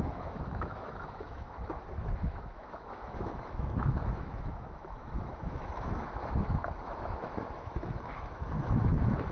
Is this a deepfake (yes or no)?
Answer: yes